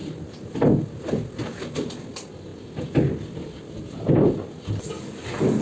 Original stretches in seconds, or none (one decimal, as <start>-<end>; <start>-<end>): 0.5-5.6